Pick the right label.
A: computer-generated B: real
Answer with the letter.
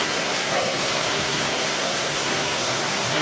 A